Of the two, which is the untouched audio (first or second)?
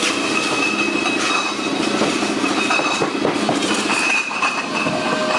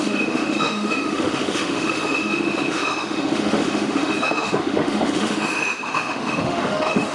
first